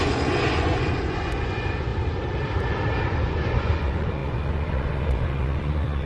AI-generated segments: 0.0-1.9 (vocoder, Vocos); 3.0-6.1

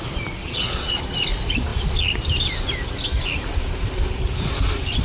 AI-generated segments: 0.4-1.0 (vocoder, Vocos)